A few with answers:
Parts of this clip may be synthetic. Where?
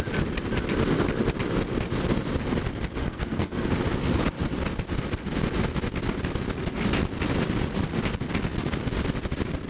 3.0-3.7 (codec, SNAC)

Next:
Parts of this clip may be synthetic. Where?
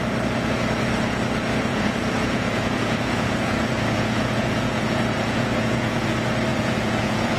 1.7-6.1 (vocoder, Vocos); 6.5-7.4